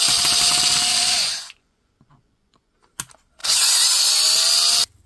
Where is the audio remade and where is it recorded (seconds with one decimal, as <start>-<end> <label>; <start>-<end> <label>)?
0.0-0.9 recorded; 0.9-2.7 remade; 2.7-3.4 recorded; 3.4-4.1 remade; 4.1-5.1 recorded